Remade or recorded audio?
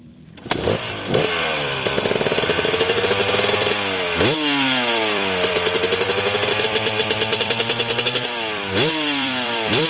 remade